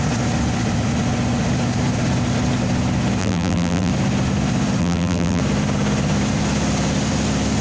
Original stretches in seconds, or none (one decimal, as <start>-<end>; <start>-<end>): 0.0-3.2; 3.9-4.8; 5.4-7.6